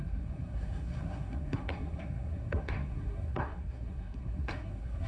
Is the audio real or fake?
fake